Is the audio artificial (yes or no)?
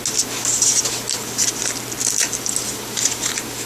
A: no